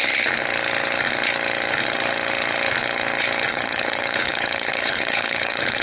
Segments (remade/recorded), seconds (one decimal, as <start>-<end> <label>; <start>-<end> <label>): 0.0-3.5 recorded; 3.5-5.8 remade